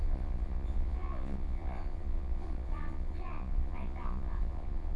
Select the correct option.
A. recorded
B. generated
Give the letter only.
B